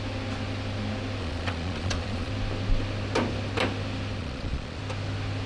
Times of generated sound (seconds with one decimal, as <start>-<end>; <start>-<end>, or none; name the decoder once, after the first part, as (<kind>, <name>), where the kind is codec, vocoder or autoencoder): 1.2-2.3 (vocoder, Vocos); 4.2-4.8